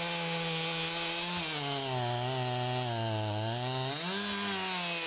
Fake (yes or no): no